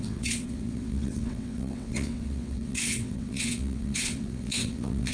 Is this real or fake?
fake